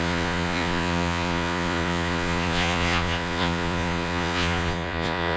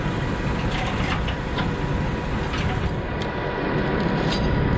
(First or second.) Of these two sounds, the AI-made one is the first